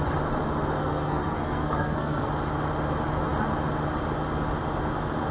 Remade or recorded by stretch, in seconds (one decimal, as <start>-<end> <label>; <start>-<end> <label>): 0.0-0.8 recorded; 0.8-2.3 remade; 2.3-5.3 recorded